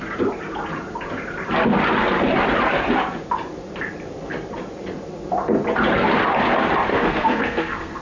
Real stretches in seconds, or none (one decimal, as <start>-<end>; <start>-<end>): 0.0-6.9